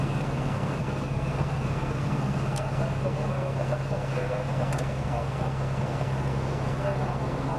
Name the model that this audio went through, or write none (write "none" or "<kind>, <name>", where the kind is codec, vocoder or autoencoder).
codec, SNAC